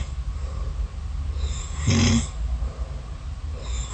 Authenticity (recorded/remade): recorded